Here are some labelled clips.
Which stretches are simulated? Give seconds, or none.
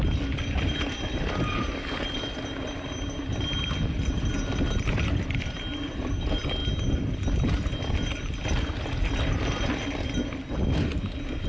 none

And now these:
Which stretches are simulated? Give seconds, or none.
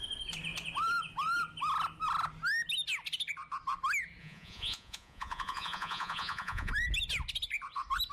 4.2-6.7 (vocoder, Vocos)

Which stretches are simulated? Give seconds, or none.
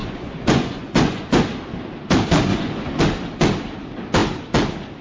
0.0-1.4 (vocoder, Vocos); 2.5-3.0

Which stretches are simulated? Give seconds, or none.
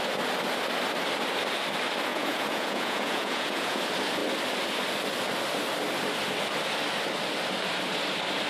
2.1-3.8 (vocoder, Vocos)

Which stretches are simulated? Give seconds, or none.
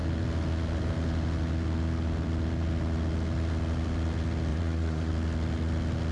4.5-5.1 (vocoder, Vocos)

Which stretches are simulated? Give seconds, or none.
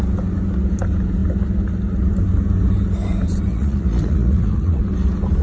3.5-4.8 (vocoder, Vocos)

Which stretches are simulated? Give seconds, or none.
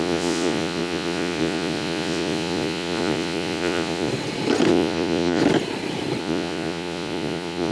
0.0-4.1 (vocoder, Vocos); 4.7-5.4; 6.2-7.7